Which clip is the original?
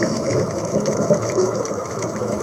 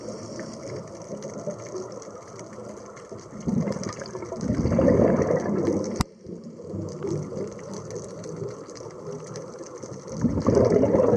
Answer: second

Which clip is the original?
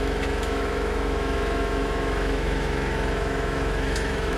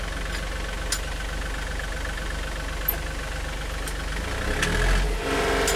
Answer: second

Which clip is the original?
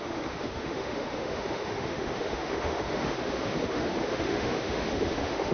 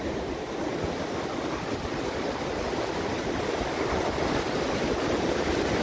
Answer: second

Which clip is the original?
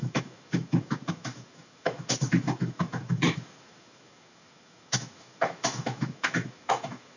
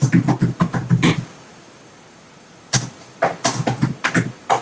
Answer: second